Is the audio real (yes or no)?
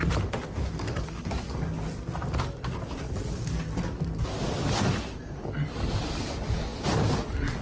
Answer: yes